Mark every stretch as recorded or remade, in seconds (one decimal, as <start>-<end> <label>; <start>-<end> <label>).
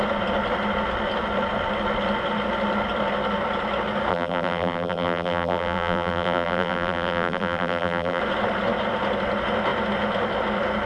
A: 0.0-4.1 recorded; 4.1-8.2 remade; 8.2-10.9 recorded